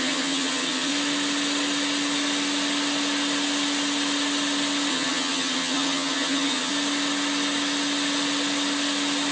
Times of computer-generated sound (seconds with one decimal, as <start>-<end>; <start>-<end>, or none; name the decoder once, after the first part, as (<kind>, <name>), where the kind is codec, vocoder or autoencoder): 0.0-0.9 (vocoder, HiFi-GAN); 4.9-6.7